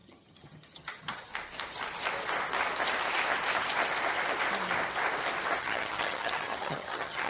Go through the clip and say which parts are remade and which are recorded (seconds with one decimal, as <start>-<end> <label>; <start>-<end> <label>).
0.0-1.3 remade; 1.3-5.6 recorded; 5.6-7.3 remade